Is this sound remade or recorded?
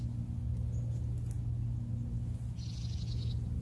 recorded